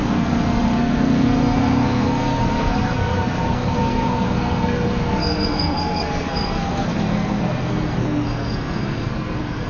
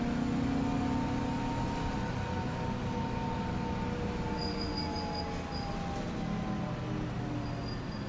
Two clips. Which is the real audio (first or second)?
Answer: second